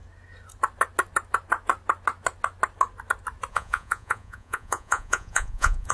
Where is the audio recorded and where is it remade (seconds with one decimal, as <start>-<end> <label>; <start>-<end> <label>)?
0.0-3.5 recorded; 3.5-5.9 remade